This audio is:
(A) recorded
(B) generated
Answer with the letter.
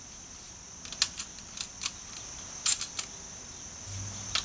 A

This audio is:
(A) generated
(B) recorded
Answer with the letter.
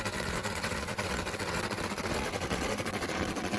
A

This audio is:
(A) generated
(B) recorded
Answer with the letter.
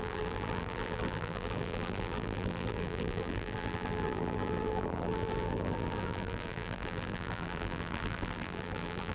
A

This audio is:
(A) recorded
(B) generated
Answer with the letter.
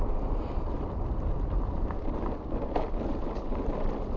A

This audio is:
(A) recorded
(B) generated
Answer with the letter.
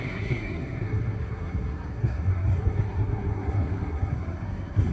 B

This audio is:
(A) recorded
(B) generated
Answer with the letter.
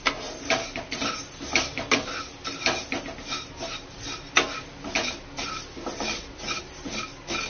A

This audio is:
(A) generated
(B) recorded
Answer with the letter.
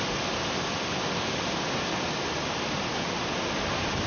B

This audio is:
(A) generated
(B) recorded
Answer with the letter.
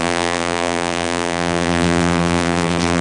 A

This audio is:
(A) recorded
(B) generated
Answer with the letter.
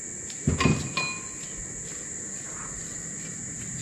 A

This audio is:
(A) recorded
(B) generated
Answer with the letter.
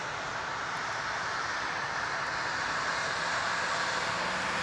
A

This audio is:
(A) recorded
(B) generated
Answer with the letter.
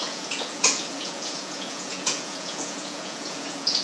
B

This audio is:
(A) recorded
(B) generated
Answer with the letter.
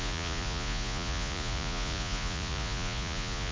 B